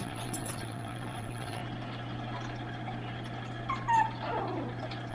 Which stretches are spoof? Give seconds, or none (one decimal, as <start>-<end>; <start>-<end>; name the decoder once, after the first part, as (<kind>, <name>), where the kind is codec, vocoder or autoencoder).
0.0-1.6 (vocoder, WaveNeXt)